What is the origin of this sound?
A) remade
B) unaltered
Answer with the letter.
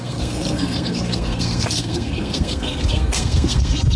A